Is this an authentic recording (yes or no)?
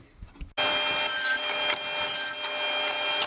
yes